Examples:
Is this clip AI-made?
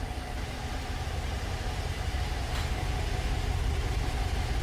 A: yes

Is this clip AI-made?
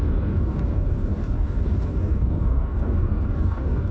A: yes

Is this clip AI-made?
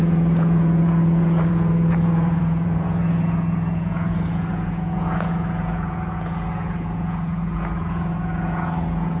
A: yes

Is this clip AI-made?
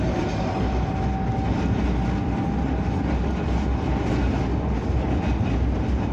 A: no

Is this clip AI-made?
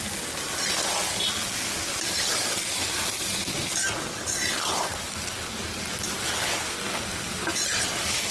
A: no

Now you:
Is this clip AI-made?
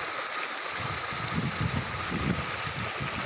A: no